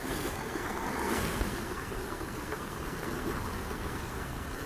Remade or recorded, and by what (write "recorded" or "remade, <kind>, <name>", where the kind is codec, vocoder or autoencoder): remade, codec, SNAC